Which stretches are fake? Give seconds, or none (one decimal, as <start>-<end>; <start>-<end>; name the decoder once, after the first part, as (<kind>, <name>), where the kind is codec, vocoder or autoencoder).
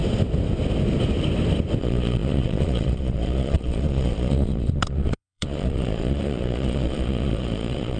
1.8-8.0 (vocoder, Vocos)